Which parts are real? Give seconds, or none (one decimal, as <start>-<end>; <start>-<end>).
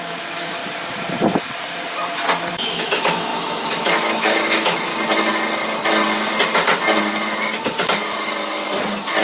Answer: 0.6-2.5; 4.9-9.2